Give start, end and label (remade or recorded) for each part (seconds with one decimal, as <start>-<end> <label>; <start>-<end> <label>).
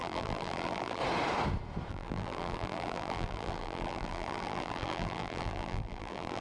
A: 0.0-1.0 remade; 1.0-1.9 recorded; 1.9-6.4 remade